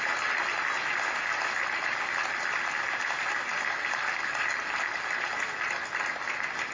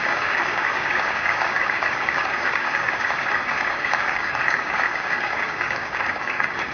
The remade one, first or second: second